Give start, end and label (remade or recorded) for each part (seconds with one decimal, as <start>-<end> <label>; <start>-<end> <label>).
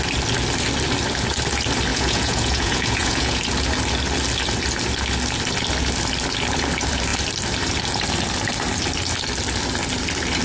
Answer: 0.0-1.9 recorded; 1.9-3.4 remade; 3.4-10.4 recorded